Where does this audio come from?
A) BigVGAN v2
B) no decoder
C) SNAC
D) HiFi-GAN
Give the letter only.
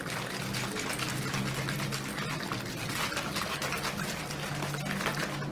B